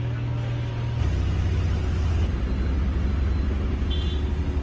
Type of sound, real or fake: real